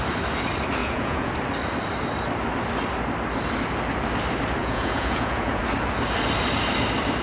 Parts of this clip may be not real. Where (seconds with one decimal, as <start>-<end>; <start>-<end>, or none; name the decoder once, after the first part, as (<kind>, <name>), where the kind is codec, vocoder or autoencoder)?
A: 0.8-1.3 (vocoder, Vocos); 4.6-5.6